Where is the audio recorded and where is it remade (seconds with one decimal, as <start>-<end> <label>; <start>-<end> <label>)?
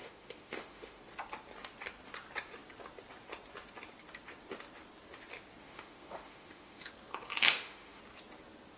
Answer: 0.0-1.0 remade; 1.0-5.6 recorded; 5.6-6.9 remade; 6.9-7.4 recorded; 7.4-8.0 remade; 8.0-8.8 recorded